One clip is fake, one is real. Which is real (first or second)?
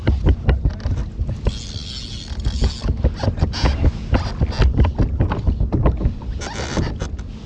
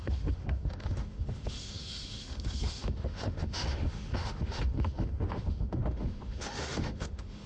first